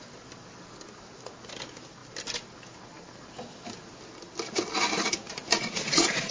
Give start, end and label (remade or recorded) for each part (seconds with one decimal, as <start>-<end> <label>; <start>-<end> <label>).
0.0-5.5 recorded; 5.5-6.3 remade